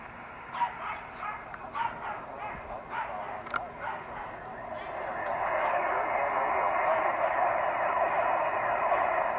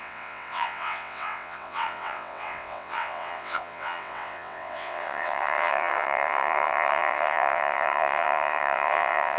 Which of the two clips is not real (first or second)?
second